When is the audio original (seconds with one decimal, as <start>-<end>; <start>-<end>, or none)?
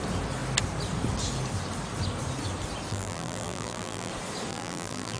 0.0-2.9; 4.1-4.5